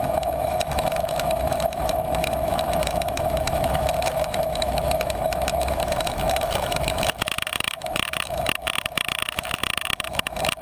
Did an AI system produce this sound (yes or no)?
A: yes